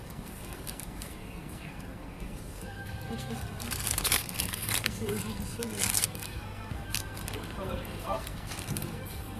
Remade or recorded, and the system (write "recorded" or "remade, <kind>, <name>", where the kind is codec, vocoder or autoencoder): remade, codec, SNAC